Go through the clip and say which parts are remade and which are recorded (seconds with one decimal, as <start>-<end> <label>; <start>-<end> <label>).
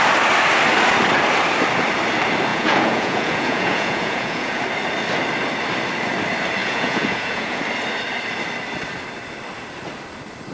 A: 0.0-2.5 recorded; 2.5-4.6 remade; 4.6-6.6 recorded; 6.6-7.6 remade; 7.6-10.5 recorded